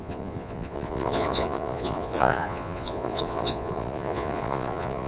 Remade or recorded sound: remade